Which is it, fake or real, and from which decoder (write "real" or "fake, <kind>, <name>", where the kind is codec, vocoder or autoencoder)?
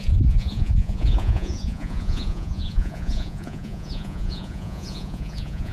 fake, vocoder, Vocos